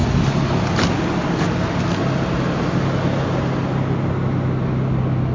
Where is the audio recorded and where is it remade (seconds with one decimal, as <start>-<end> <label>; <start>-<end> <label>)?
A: 0.0-5.3 recorded